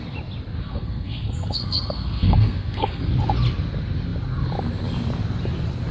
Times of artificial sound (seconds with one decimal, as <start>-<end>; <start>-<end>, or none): 0.6-3.1